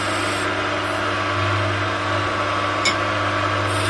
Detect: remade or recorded recorded